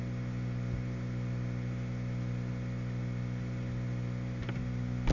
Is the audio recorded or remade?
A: recorded